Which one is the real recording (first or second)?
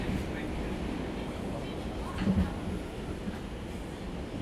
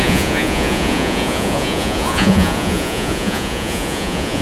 first